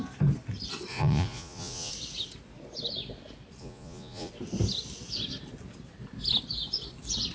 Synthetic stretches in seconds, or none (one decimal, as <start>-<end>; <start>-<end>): 0.9-1.9; 3.6-4.3